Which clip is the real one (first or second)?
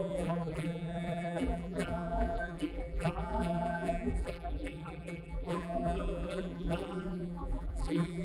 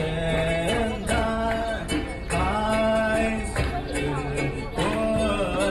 second